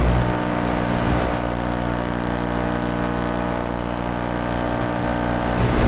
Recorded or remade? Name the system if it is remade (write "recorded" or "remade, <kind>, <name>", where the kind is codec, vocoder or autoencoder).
recorded